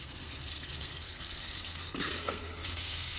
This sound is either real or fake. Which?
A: fake